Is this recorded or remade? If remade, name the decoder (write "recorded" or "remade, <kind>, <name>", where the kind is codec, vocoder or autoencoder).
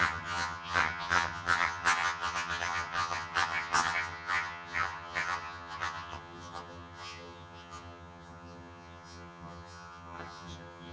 remade, vocoder, HiFi-GAN